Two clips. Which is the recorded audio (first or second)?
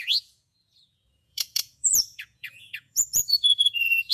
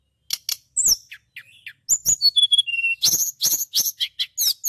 second